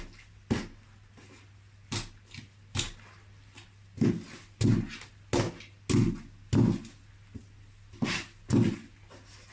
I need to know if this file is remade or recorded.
recorded